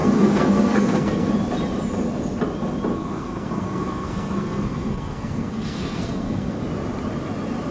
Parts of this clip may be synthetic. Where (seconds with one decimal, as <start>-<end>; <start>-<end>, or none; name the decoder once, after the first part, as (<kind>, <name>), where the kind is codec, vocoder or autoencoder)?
0.0-1.3 (codec, SNAC); 2.9-6.6